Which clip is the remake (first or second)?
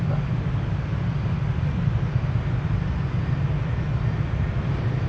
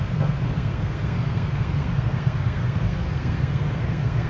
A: second